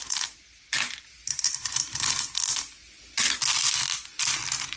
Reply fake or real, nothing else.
real